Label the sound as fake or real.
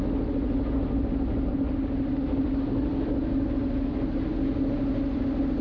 real